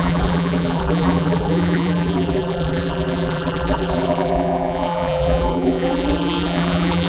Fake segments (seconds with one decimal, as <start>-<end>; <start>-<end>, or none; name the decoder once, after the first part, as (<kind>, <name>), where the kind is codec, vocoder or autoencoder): 0.0-7.1 (vocoder, BigVGAN v2)